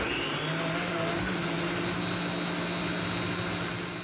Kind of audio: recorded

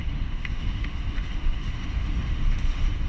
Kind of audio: remade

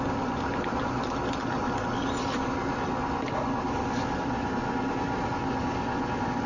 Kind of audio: recorded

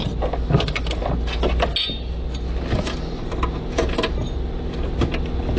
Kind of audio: recorded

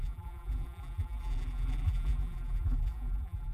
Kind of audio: remade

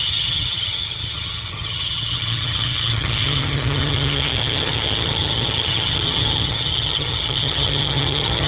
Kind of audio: remade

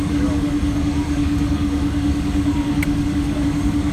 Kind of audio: remade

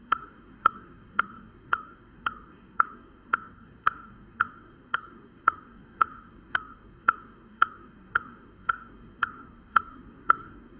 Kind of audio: remade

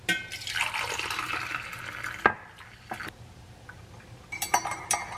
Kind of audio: recorded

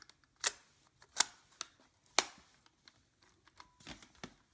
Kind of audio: recorded